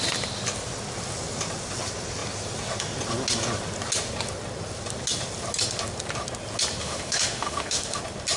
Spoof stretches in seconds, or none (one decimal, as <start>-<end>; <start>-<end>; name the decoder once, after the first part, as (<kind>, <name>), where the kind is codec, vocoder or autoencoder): 6.8-8.0 (autoencoder, DAC-VAE)